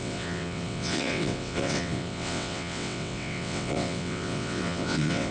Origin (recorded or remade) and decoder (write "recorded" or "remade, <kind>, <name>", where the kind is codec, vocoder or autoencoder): remade, vocoder, WaveNeXt